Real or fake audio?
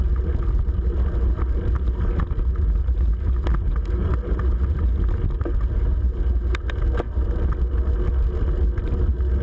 real